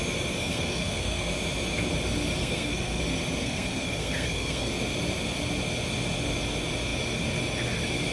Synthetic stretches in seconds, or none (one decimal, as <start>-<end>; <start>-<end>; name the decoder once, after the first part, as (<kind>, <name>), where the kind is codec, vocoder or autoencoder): 0.5-1.3 (codec, SNAC); 2.4-3.0; 3.4-4.7